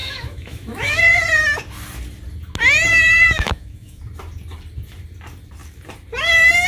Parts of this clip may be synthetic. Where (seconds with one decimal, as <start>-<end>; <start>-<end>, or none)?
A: 0.0-1.0; 2.9-4.0